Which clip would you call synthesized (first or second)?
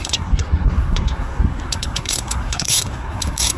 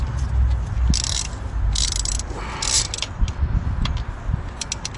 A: first